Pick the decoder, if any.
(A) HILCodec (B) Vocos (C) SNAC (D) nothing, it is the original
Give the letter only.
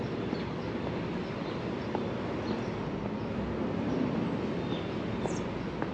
D